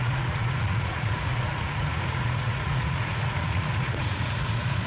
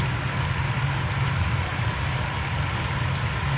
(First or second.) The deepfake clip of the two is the first